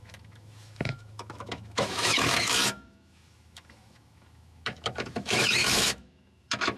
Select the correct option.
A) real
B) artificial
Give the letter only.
B